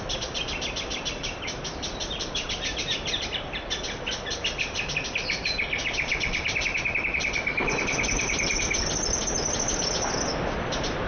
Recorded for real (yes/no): no